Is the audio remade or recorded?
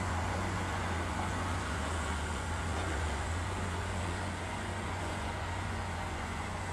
remade